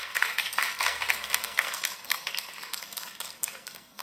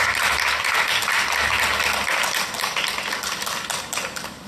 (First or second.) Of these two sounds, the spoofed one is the first